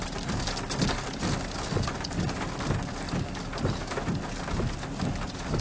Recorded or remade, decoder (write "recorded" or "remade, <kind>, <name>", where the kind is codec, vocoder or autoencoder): recorded